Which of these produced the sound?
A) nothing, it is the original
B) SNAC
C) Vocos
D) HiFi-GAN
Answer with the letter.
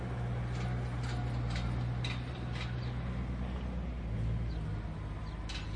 A